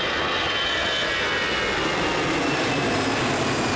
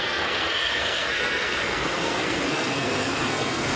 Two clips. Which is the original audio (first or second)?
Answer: first